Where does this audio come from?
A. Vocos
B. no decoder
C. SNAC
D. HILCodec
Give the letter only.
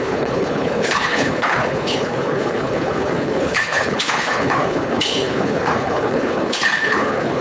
D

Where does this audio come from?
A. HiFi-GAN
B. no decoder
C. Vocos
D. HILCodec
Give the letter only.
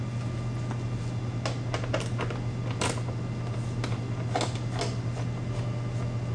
B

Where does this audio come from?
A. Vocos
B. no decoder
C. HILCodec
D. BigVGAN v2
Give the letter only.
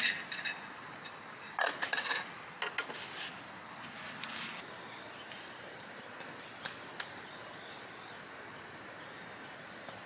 B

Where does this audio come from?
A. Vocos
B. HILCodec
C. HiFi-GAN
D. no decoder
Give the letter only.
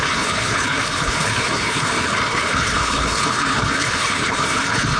B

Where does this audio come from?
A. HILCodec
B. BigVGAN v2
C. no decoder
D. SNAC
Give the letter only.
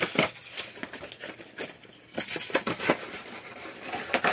C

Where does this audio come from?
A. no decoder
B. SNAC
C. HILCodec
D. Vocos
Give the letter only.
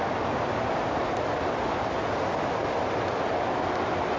A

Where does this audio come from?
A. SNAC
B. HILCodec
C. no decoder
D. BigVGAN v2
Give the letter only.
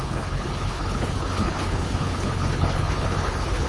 B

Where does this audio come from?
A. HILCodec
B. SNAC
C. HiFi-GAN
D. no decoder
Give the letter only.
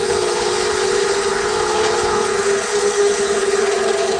A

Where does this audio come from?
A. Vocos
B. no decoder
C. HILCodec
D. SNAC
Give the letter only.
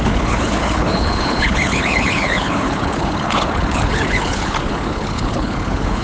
C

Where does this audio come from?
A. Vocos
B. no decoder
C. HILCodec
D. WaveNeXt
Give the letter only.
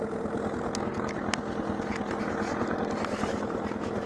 B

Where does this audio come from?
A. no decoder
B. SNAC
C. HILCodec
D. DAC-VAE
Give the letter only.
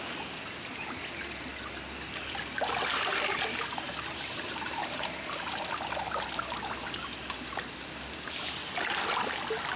A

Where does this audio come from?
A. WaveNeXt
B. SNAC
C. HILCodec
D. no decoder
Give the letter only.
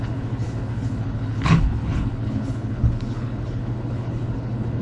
C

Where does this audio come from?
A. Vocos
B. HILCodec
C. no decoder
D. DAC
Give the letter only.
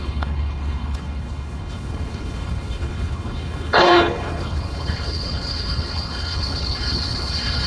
B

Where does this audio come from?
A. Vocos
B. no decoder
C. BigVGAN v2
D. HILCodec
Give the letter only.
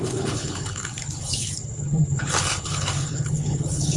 D